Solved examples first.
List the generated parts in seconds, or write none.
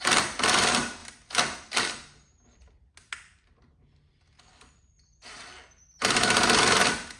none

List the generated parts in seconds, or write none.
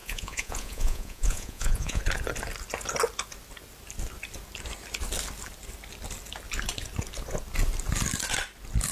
0.0-2.0 (vocoder, Vocos)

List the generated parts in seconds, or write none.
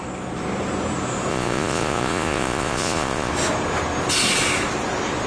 1.3-3.3 (vocoder, Vocos)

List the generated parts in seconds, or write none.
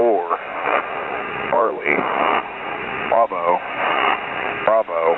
0.5-3.3 (vocoder, Vocos); 3.9-4.5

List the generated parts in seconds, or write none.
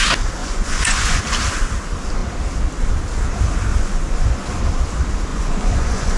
0.4-1.2 (vocoder, Vocos); 3.7-4.6; 5.3-6.2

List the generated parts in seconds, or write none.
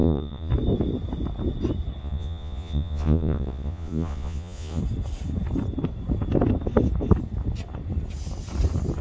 0.0-0.5 (vocoder, Vocos); 2.0-4.8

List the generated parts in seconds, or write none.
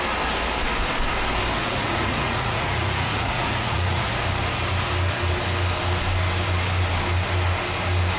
1.6-4.1 (vocoder, Vocos)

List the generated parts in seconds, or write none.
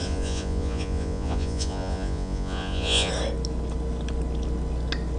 0.0-3.1 (vocoder, Vocos)